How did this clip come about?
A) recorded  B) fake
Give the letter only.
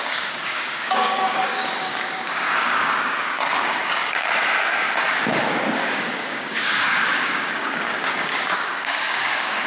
B